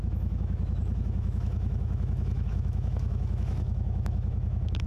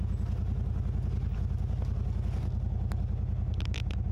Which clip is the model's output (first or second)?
first